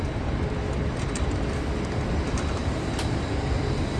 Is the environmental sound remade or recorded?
recorded